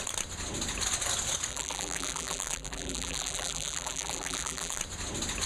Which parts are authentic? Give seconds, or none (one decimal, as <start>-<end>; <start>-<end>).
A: 0.0-1.5; 4.8-5.5